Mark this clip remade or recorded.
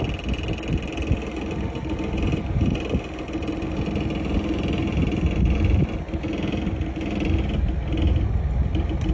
recorded